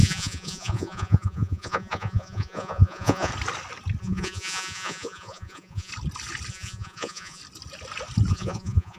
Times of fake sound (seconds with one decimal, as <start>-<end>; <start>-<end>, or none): 0.0-3.3; 4.0-5.9; 6.5-7.4; 8.3-9.0